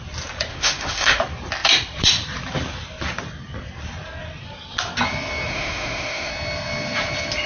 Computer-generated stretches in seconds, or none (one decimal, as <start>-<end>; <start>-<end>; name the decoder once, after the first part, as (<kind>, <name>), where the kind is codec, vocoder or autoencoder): 0.5-1.2 (autoencoder, DAC-VAE); 5.5-6.3